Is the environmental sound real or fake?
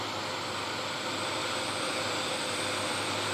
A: real